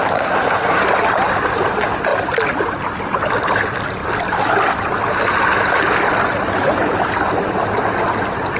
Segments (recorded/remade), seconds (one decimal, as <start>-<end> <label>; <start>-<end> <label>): 0.0-0.8 remade; 0.8-8.6 recorded